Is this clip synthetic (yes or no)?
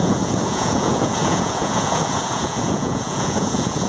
yes